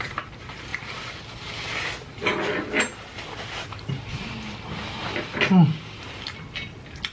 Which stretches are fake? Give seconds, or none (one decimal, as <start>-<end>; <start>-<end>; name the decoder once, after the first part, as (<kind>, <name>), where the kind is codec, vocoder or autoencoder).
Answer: none